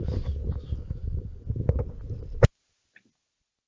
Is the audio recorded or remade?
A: recorded